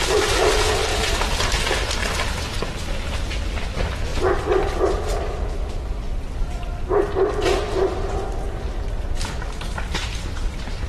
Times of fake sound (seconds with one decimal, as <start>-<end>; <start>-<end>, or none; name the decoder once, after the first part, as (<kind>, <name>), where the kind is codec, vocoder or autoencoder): 0.9-1.4 (vocoder, BigVGAN v2); 4.1-7.2